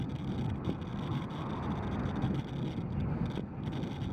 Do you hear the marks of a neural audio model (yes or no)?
no